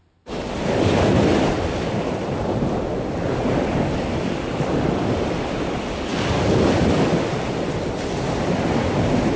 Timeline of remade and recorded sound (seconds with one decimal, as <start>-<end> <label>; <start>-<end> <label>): 0.0-9.4 recorded